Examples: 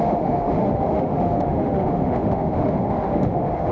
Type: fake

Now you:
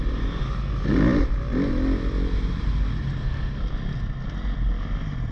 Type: real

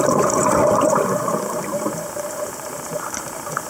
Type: fake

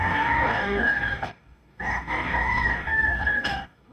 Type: fake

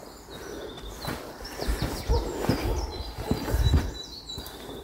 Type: fake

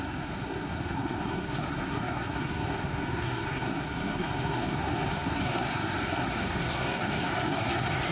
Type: fake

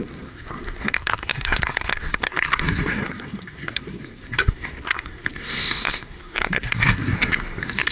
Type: fake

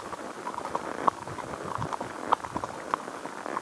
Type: real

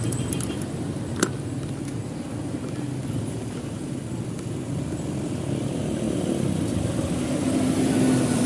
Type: real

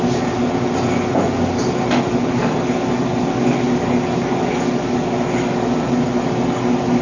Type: real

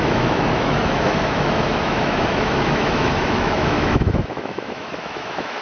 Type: fake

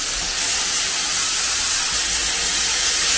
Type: real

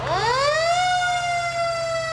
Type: real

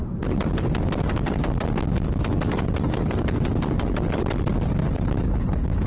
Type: real